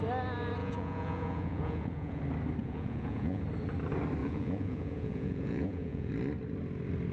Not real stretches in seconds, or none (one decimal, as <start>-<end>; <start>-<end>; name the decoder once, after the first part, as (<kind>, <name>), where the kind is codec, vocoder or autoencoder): 0.6-2.2 (vocoder, Vocos); 2.6-3.4; 4.2-6.1